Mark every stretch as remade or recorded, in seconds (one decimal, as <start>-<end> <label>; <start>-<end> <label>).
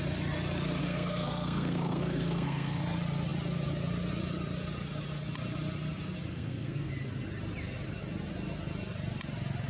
0.0-0.8 recorded; 0.8-2.8 remade; 2.8-6.3 recorded; 6.3-6.9 remade; 6.9-9.7 recorded